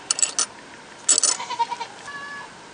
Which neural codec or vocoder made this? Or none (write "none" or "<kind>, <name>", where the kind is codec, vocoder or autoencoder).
none